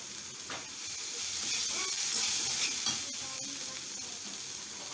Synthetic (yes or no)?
no